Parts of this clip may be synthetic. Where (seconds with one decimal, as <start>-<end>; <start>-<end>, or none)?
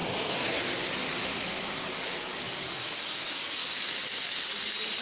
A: 3.6-4.4